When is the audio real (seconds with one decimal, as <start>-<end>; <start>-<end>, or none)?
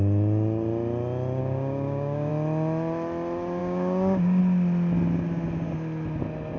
0.0-1.4; 2.3-3.6; 4.4-6.6